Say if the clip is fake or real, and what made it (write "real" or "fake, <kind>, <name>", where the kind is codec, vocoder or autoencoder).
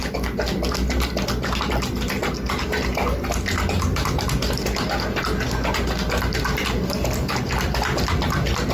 real